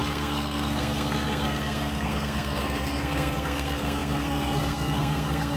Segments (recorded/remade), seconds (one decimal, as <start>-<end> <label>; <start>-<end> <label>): 0.0-5.6 remade